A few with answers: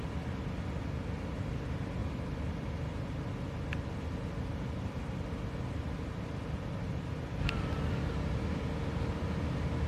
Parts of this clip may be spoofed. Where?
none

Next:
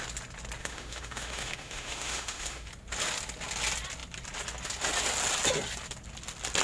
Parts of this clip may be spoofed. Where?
0.6-2.7

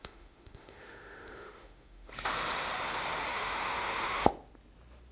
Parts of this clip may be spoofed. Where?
0.0-2.1; 3.3-4.3

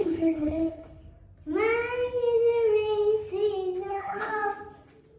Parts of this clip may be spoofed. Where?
0.0-1.0; 3.9-4.3

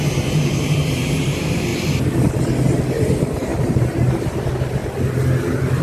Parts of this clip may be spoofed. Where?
0.0-1.7; 3.0-4.8

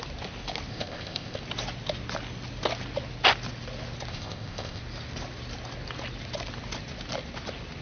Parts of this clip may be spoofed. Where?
0.7-1.4; 4.1-4.8

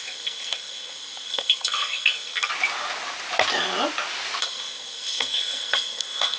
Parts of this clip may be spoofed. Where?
0.0-2.5; 4.4-6.4

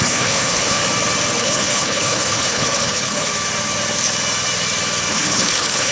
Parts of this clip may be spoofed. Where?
0.0-0.8; 1.4-3.3; 5.1-5.9